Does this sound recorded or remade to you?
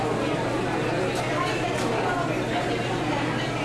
recorded